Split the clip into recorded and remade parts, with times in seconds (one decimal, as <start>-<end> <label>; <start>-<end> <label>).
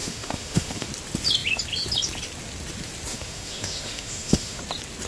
0.0-0.9 remade; 0.9-3.1 recorded; 3.1-4.6 remade; 4.6-5.1 recorded